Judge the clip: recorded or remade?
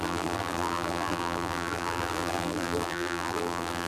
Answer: remade